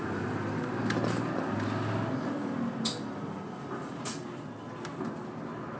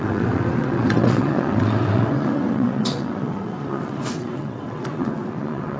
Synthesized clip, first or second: second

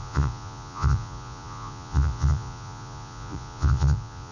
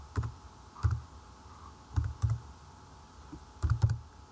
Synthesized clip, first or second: first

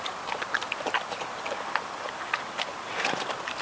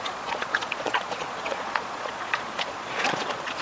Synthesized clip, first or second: second